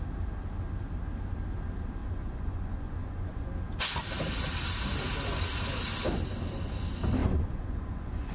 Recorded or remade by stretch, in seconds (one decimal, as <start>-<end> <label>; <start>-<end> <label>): 0.0-2.0 recorded; 2.0-3.5 remade; 3.5-7.2 recorded; 7.2-8.3 remade